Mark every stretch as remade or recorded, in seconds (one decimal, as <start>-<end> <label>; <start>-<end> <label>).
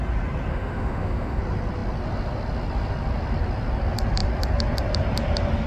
0.0-0.5 recorded; 0.5-1.4 remade; 1.4-5.7 recorded